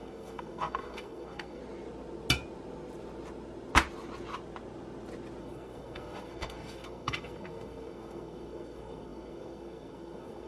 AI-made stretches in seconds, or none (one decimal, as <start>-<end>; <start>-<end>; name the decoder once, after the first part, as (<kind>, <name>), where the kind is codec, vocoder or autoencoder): 0.0-1.6 (codec, SNAC); 5.4-10.5